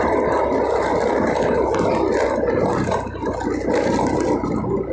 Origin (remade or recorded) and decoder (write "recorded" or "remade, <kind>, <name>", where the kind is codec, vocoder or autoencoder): recorded